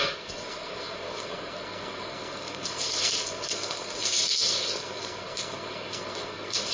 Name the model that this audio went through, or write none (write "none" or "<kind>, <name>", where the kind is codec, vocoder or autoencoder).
codec, SNAC